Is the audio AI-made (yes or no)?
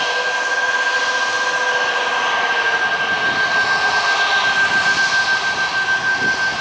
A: no